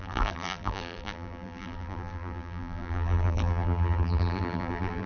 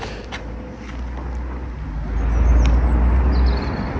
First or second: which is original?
second